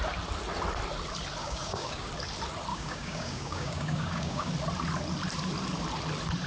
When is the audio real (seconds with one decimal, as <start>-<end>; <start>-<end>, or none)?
0.0-1.4; 2.1-2.7; 4.5-6.5